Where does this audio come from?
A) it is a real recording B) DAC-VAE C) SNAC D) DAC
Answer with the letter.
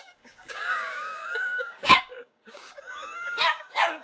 D